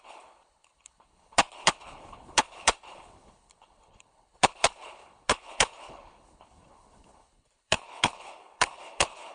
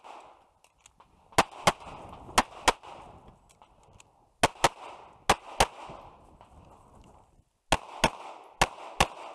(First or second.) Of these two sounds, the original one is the second